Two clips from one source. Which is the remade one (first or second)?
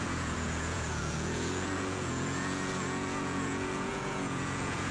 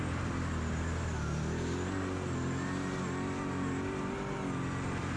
first